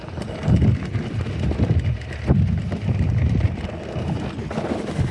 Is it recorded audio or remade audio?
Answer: recorded